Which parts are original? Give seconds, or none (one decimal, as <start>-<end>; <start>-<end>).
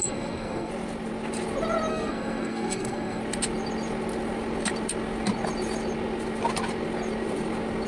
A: 0.7-1.9; 3.2-7.9